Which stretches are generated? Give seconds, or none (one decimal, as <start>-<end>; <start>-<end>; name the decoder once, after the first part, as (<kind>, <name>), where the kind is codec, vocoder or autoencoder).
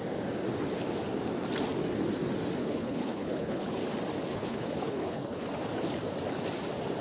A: 2.6-3.7 (codec, HILCodec); 4.3-5.5